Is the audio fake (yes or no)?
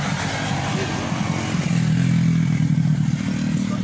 no